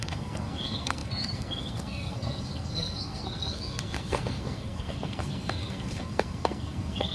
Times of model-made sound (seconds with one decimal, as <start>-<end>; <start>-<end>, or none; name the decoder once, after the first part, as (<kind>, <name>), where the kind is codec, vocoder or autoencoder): 0.0-7.1 (codec, SNAC)